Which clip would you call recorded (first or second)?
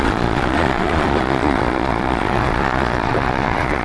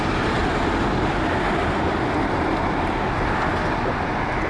second